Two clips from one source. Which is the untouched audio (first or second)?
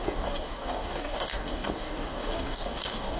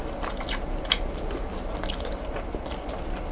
second